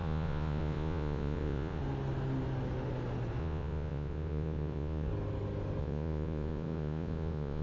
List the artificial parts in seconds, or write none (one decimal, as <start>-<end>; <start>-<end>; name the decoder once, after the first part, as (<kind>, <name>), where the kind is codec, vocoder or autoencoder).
0.0-1.8 (vocoder, Vocos); 3.4-5.1; 5.8-7.6